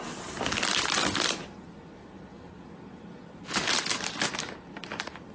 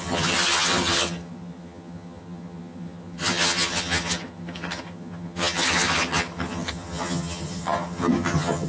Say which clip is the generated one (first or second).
second